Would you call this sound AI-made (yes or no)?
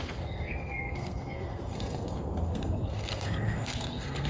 yes